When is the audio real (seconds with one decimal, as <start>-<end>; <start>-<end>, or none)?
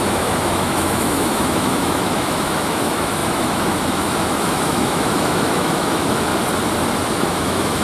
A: 6.3-7.3